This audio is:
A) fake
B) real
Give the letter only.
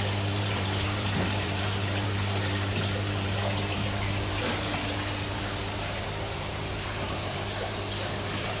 A